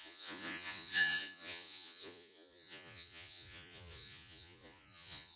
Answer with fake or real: fake